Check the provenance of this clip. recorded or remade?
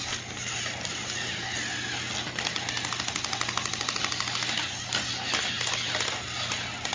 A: recorded